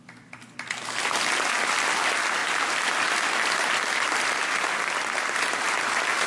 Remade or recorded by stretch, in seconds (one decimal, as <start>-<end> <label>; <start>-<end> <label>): 0.0-6.3 recorded